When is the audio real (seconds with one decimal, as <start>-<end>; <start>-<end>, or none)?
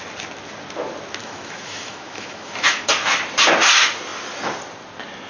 0.0-1.2; 2.9-5.3